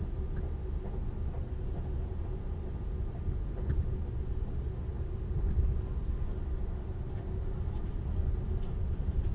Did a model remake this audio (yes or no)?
no